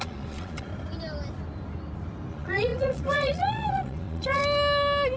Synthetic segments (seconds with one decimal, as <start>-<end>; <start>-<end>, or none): 0.0-0.7; 2.3-4.4